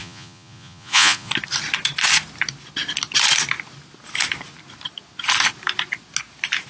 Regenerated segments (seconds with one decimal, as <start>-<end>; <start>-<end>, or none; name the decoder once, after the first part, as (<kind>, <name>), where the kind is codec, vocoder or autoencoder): 0.0-1.3 (vocoder, Vocos)